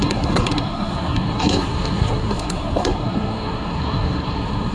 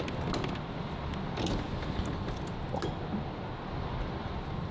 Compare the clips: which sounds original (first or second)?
second